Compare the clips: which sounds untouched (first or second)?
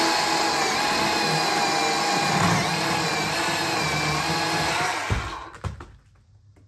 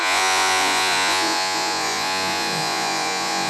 first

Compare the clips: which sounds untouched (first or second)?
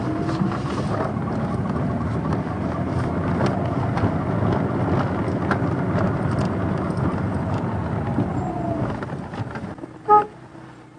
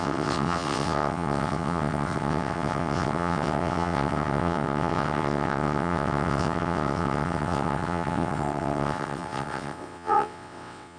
first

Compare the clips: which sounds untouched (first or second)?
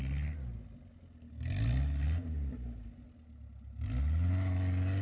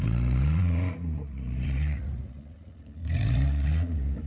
first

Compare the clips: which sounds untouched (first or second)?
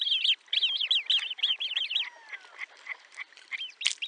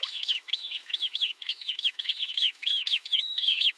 first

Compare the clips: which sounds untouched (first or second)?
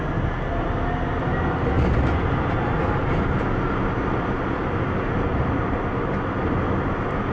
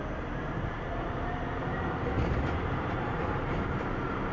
first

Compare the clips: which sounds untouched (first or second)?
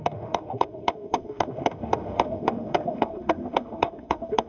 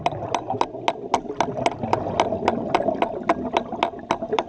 second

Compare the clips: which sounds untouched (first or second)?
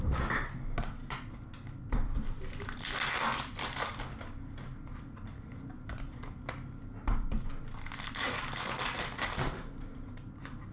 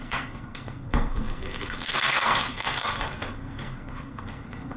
first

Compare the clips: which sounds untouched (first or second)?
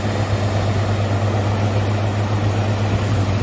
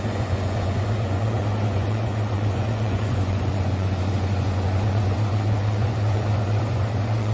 first